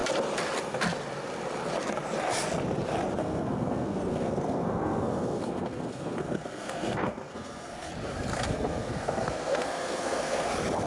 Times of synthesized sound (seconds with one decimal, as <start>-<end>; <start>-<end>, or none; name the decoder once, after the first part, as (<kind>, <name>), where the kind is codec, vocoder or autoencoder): 3.2-7.9 (codec, SNAC); 8.3-10.5